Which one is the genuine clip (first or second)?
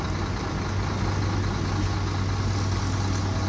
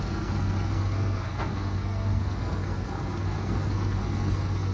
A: first